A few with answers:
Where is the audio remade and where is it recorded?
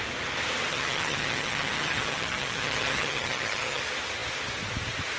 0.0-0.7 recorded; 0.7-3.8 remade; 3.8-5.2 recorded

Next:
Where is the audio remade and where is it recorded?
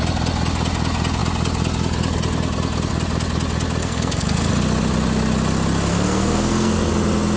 0.0-3.8 recorded; 3.8-4.5 remade; 4.5-5.9 recorded; 5.9-6.9 remade; 6.9-7.4 recorded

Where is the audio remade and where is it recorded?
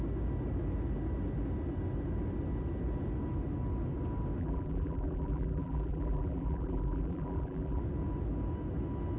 0.0-4.4 recorded; 4.4-7.8 remade; 7.8-9.2 recorded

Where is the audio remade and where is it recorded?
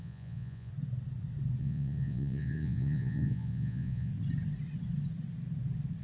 0.0-0.7 remade; 0.7-1.6 recorded; 1.6-4.1 remade; 4.1-6.0 recorded